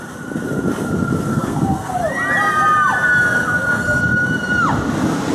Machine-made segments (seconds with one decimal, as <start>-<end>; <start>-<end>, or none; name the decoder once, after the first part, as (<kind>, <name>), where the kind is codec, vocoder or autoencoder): 1.3-1.9 (codec, SNAC)